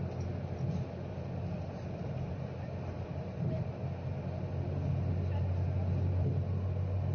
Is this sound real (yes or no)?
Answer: yes